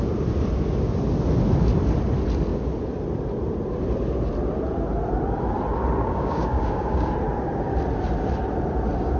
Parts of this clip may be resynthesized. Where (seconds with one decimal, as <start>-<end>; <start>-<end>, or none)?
6.0-7.1